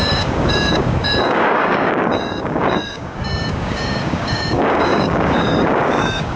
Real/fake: fake